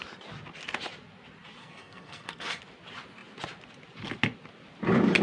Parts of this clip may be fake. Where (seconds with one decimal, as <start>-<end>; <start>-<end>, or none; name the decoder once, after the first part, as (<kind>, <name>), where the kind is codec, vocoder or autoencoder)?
1.6-2.6 (codec, SNAC)